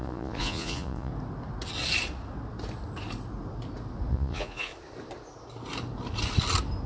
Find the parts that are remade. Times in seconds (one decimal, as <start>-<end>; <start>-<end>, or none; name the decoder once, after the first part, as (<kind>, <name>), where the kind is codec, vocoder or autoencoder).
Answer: 0.0-1.1 (vocoder, Vocos); 4.1-4.7